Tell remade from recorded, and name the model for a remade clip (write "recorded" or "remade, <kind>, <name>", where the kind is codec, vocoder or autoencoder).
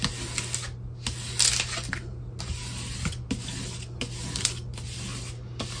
recorded